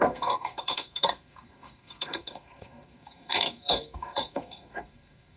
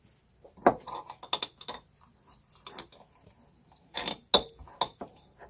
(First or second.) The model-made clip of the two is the first